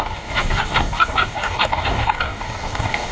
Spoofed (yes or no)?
yes